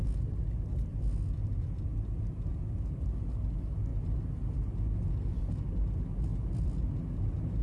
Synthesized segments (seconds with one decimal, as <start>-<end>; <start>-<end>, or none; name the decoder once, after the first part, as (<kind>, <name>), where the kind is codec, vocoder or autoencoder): none